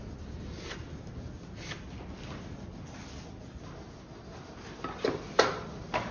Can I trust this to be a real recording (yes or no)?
yes